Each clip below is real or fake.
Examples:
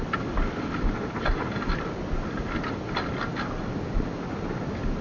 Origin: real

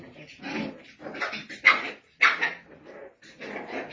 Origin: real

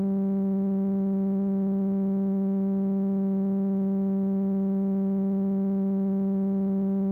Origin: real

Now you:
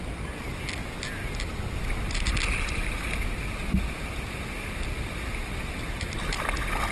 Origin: real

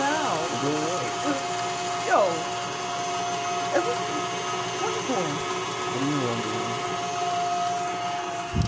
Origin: real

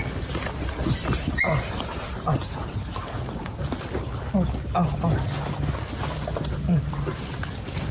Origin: real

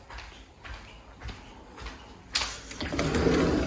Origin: real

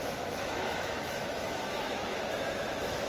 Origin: fake